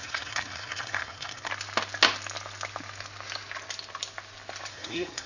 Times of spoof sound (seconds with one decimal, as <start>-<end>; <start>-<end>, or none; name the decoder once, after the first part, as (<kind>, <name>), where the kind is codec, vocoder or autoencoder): 0.0-1.5 (codec, SNAC); 4.7-5.3